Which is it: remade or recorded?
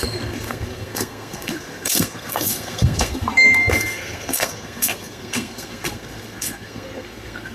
remade